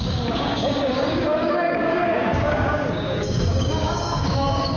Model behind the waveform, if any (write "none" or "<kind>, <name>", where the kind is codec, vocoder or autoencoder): codec, DAC